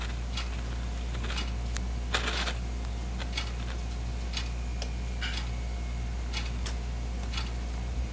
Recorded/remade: recorded